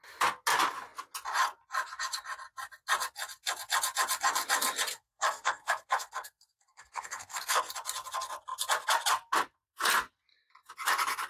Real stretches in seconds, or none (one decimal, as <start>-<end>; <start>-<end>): 0.0-4.9; 7.7-11.3

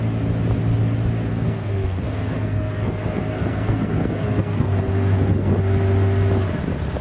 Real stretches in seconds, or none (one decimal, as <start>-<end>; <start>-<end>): 0.0-1.3; 5.5-7.0

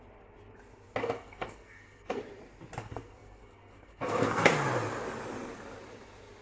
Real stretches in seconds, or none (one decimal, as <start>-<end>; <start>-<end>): 0.0-1.0; 2.2-2.8; 4.5-6.4

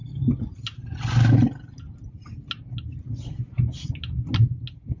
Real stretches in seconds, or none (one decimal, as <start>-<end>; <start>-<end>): 0.0-5.0

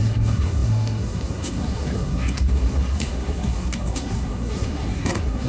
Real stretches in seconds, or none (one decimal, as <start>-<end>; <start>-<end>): none

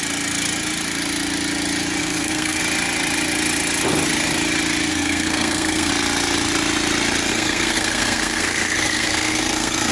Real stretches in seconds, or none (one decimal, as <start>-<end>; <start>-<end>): 0.0-2.0; 2.6-4.9; 5.9-7.3

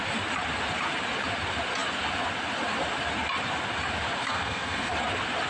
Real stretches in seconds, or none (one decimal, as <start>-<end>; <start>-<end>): 0.0-4.3; 4.9-5.5